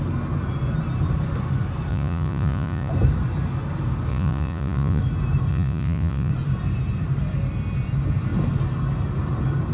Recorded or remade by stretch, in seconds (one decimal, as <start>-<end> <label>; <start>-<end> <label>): 0.0-1.9 recorded; 1.9-2.9 remade; 2.9-4.1 recorded; 4.1-5.0 remade; 5.0-5.5 recorded; 5.5-6.3 remade; 6.3-9.7 recorded